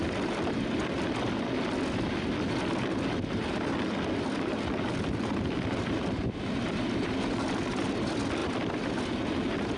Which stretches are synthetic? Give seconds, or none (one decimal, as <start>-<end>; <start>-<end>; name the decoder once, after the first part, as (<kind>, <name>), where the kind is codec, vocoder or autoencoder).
none